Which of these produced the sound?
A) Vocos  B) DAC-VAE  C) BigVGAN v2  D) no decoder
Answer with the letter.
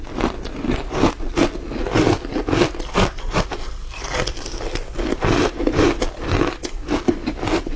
D